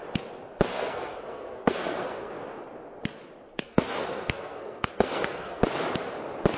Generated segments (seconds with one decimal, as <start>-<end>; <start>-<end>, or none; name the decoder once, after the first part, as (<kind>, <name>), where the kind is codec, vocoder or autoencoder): 0.7-2.3 (codec, SNAC); 3.5-5.6